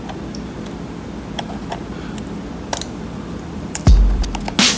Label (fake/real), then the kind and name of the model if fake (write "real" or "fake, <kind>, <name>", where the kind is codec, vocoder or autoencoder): real